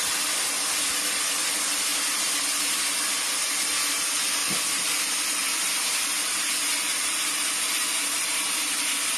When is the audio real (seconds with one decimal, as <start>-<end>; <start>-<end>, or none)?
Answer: 0.0-9.2